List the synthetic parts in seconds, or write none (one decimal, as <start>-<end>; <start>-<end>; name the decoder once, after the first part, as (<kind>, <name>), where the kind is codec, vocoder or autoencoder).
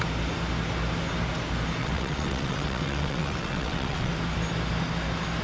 1.8-4.1 (vocoder, WaveNeXt)